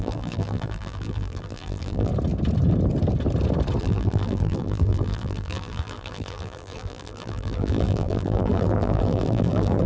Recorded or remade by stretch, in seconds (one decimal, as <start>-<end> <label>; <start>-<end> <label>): 0.0-2.1 remade; 2.1-3.8 recorded; 3.8-9.9 remade